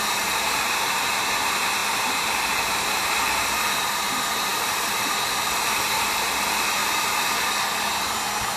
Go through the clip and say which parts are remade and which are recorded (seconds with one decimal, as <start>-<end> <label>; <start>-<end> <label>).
0.0-6.8 remade; 6.8-7.8 recorded; 7.8-8.6 remade